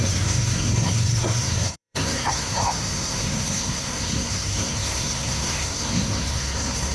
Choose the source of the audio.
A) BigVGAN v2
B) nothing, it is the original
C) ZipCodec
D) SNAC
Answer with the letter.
D